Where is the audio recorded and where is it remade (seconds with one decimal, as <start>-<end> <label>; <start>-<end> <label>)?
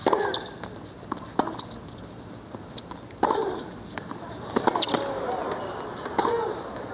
0.0-6.9 recorded